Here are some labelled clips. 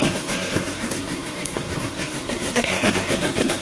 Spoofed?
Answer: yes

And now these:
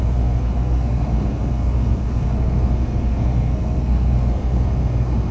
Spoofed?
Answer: yes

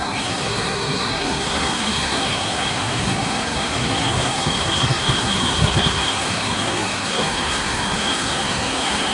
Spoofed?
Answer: yes